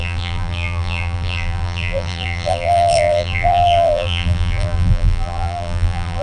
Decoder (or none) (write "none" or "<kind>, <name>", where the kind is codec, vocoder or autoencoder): vocoder, BigVGAN v2